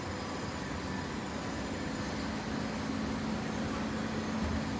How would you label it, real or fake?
real